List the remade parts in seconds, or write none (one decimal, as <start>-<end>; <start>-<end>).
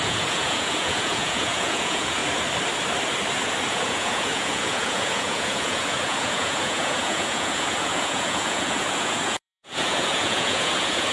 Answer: 0.0-2.2; 3.7-11.1